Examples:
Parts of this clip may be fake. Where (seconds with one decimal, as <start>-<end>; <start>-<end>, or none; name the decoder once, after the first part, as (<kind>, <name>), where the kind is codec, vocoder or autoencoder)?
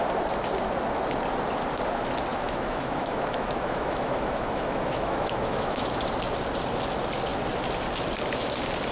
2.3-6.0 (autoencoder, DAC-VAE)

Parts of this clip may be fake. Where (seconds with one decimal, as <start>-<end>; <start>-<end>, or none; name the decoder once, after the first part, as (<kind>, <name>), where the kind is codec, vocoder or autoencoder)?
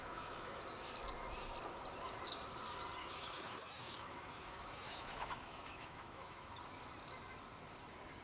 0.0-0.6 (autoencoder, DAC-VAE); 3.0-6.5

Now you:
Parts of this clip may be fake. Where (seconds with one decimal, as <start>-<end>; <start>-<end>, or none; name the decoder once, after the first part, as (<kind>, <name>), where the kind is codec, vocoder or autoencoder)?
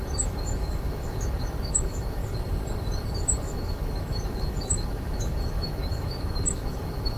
0.0-2.2 (autoencoder, DAC-VAE); 3.5-7.2